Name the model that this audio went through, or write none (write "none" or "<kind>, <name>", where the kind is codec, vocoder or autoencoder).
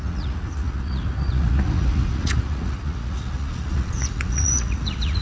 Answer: vocoder, Vocos